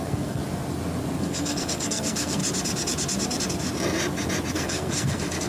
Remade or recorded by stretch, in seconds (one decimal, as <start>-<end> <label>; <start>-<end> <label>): 0.0-0.4 remade; 0.4-1.2 recorded; 1.2-2.4 remade; 2.4-4.5 recorded; 4.5-5.5 remade